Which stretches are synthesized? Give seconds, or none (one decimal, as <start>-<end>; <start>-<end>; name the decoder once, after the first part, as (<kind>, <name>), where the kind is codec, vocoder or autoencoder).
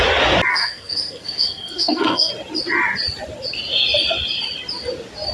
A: 0.5-2.3 (codec, SNAC)